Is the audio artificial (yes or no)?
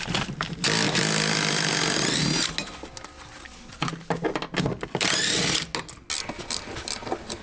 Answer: no